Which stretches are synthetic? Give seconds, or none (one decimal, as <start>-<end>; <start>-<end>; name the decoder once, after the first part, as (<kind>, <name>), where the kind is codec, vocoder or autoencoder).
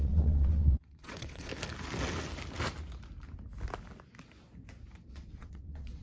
0.0-1.5 (vocoder, WaveNeXt); 5.1-6.0